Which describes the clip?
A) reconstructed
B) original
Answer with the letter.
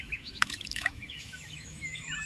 A